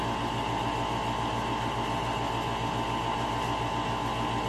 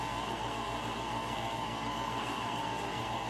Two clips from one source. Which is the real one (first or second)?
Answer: first